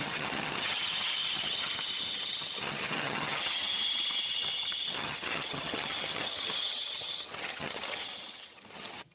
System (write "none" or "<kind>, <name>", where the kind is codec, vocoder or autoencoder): vocoder, HiFi-GAN